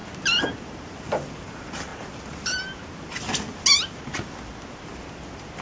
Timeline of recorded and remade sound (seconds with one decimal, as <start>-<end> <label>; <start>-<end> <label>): 0.0-5.6 recorded